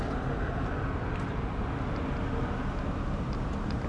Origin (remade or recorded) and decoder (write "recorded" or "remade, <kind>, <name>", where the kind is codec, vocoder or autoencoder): recorded